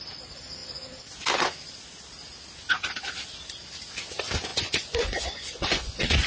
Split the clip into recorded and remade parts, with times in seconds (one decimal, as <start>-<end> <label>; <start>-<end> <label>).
0.0-4.5 recorded; 4.5-6.3 remade